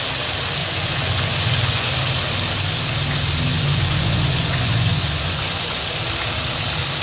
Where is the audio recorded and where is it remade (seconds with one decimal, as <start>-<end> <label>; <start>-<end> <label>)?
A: 0.0-0.6 recorded; 0.6-1.9 remade; 1.9-3.5 recorded; 3.5-5.8 remade; 5.8-7.0 recorded